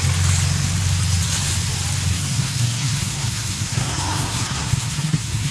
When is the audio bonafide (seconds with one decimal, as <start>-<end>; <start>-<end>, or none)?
0.0-2.1